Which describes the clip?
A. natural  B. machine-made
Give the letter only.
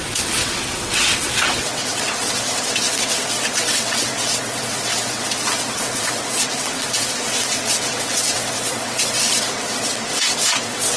B